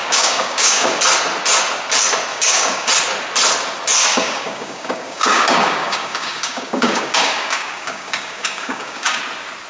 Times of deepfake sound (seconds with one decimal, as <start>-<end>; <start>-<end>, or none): 0.0-1.0; 2.3-2.9; 4.1-9.2